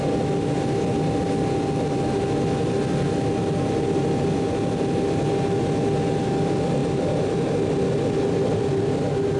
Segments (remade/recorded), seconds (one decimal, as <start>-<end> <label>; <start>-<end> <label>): 0.0-9.4 recorded